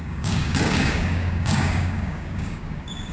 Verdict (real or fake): fake